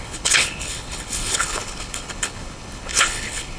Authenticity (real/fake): fake